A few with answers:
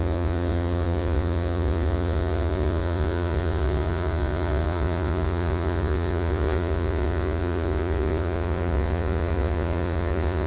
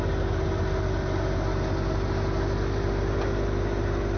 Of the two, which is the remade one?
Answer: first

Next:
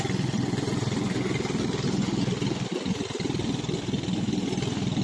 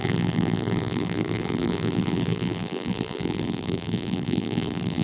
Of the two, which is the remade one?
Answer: second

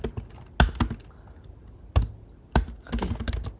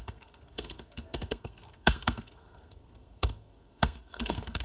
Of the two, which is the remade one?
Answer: second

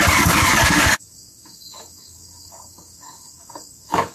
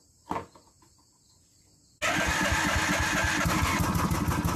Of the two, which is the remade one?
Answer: first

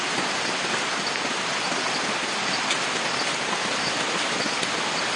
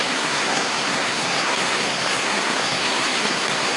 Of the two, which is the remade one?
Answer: second